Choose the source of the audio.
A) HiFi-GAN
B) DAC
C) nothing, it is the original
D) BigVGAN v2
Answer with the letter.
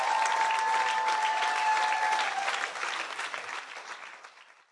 C